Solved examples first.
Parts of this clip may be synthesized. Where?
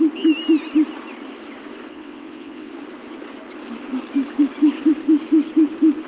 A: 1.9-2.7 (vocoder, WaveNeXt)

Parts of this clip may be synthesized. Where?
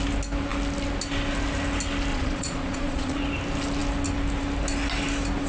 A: 2.1-3.2 (vocoder, Vocos)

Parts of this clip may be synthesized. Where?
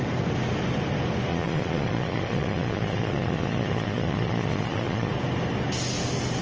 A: 1.3-5.1 (vocoder, Vocos)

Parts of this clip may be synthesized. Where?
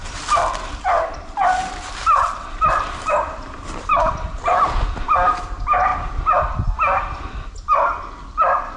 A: 1.6-4.1 (vocoder, BigVGAN v2)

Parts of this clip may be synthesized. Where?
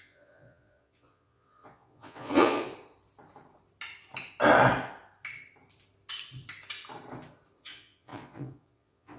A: 0.0-2.7 (vocoder, Vocos); 7.6-9.2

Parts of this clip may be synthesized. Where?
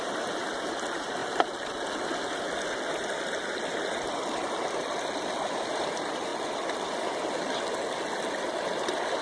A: 0.0-1.2 (vocoder, BigVGAN v2); 5.6-6.3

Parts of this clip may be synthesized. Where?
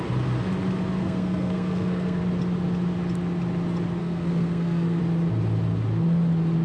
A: 1.0-2.2 (codec, SNAC); 4.0-5.0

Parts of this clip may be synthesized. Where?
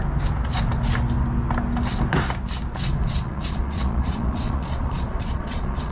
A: 2.7-5.9 (vocoder, Vocos)